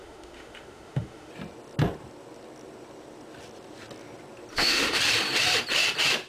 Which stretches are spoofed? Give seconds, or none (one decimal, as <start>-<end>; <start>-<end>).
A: 0.0-1.3; 4.5-5.0